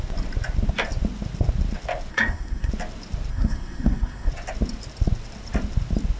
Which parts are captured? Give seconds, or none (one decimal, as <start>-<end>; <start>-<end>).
0.0-2.1; 2.7-3.3; 4.3-6.2